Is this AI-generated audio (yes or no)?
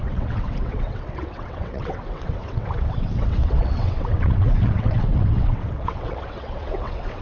yes